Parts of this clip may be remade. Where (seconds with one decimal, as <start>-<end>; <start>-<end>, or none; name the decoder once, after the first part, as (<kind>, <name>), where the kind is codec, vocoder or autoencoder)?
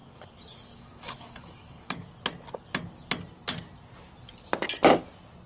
0.0-2.1 (codec, DAC)